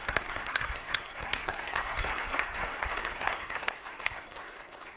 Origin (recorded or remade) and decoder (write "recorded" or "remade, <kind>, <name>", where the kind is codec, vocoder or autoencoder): remade, codec, SNAC